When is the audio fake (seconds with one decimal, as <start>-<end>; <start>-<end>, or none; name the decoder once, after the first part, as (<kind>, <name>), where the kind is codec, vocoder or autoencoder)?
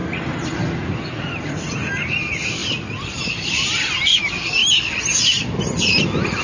2.6-3.9 (vocoder, BigVGAN v2)